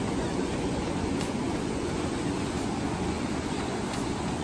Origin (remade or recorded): remade